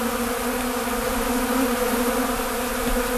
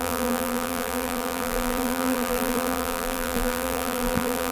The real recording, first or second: first